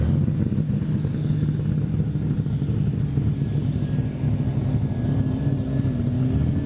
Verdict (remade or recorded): recorded